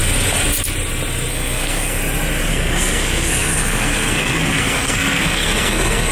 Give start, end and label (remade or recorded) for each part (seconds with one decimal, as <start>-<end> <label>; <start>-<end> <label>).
0.0-1.3 recorded; 1.3-2.0 remade; 2.0-2.5 recorded; 2.5-6.1 remade